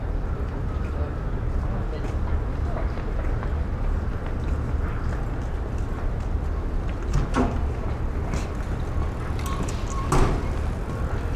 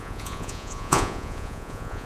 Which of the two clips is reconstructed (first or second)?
second